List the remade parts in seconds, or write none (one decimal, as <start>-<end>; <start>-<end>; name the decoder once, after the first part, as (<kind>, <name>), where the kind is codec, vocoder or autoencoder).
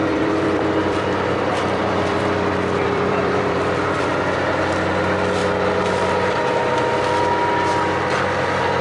0.0-4.0 (vocoder, BigVGAN v2)